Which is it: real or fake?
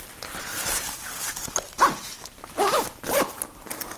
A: real